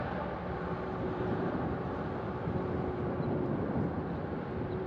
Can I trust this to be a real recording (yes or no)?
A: no